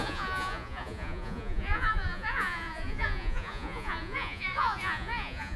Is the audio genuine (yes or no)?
no